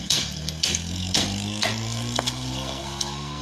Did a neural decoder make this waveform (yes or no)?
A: yes